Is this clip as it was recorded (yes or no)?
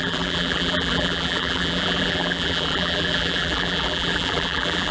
no